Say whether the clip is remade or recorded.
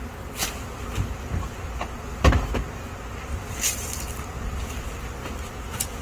recorded